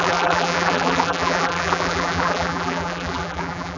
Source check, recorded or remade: remade